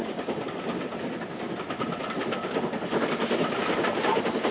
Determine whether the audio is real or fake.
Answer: real